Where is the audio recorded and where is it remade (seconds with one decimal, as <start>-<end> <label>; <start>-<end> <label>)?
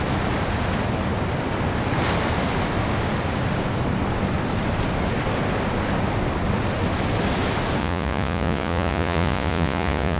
0.0-7.8 recorded; 7.8-10.2 remade